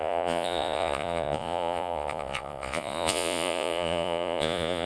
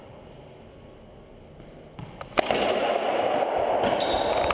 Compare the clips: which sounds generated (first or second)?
first